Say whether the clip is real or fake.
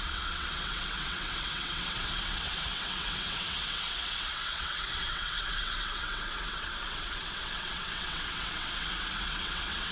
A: fake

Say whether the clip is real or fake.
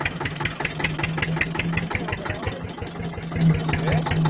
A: real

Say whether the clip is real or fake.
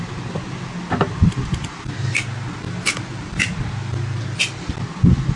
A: real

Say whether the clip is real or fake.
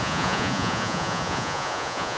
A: fake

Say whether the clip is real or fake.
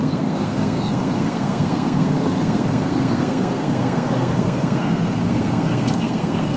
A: fake